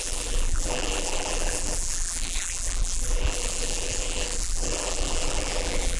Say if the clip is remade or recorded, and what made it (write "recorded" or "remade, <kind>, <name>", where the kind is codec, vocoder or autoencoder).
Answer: remade, vocoder, BigVGAN v2